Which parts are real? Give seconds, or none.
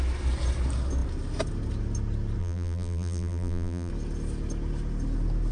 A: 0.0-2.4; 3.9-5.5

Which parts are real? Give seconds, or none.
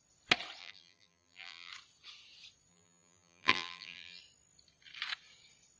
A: 0.0-0.6; 1.7-2.7; 4.2-5.8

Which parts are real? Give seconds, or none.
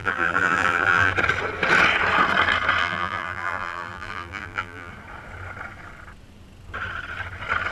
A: 1.1-2.8; 4.9-7.7